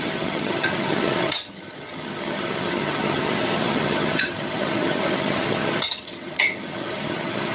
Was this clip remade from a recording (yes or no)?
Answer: yes